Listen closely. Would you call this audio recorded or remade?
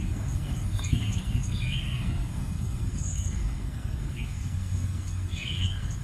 remade